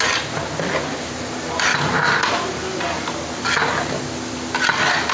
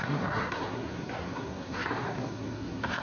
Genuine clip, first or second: first